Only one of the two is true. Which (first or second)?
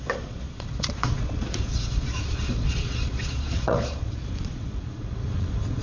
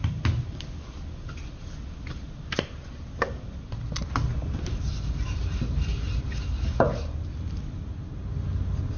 second